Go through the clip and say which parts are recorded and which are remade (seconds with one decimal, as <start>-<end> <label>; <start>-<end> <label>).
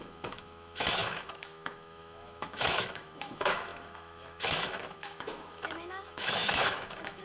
0.0-7.2 remade